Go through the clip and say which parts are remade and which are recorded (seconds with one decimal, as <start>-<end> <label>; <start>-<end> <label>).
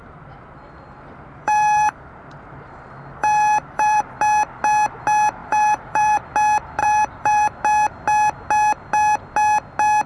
0.0-4.0 remade; 4.0-5.4 recorded; 5.4-6.2 remade; 6.2-6.8 recorded; 6.8-7.5 remade; 7.5-10.1 recorded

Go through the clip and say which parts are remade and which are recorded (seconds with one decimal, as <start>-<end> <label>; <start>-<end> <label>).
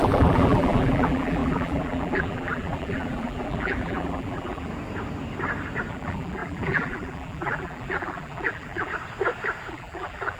0.0-4.7 remade; 4.7-5.9 recorded; 5.9-8.9 remade; 8.9-9.7 recorded; 9.7-10.4 remade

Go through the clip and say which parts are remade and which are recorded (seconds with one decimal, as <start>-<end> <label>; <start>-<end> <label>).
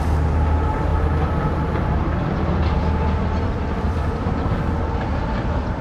0.0-0.9 recorded; 0.9-4.4 remade; 4.4-5.8 recorded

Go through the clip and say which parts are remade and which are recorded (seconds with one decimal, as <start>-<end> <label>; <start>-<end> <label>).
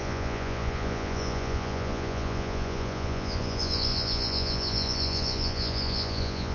0.0-6.5 remade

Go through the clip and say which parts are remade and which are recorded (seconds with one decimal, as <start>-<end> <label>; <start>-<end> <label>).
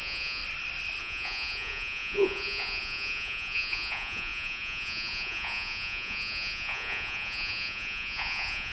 0.0-0.4 remade; 0.4-1.0 recorded; 1.0-8.7 remade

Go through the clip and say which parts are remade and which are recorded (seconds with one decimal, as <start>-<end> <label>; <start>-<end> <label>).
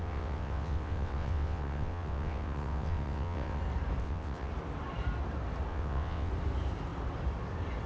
0.0-3.6 remade; 3.6-4.0 recorded; 4.0-4.5 remade; 4.5-5.7 recorded; 5.7-6.3 remade; 6.3-7.9 recorded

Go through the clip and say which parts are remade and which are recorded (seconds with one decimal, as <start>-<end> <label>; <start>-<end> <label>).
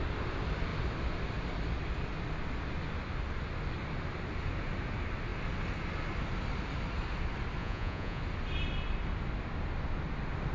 0.0-7.6 recorded; 7.6-8.2 remade; 8.2-10.5 recorded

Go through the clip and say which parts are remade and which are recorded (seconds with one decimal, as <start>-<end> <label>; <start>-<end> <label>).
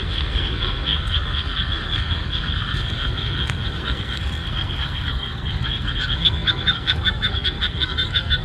0.0-8.4 remade